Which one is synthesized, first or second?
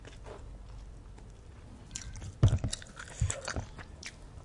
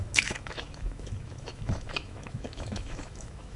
second